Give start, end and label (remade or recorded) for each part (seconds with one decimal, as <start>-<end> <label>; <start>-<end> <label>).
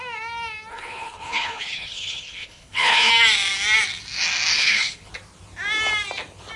0.0-0.7 recorded; 0.7-3.1 remade; 3.1-4.5 recorded; 4.5-5.1 remade; 5.1-6.6 recorded